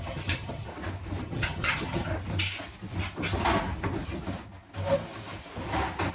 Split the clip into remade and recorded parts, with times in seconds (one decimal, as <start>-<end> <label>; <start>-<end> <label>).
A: 0.0-0.7 remade; 0.7-1.2 recorded; 1.2-2.1 remade; 2.1-6.1 recorded